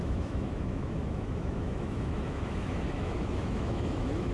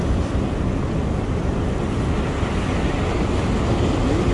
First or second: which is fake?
first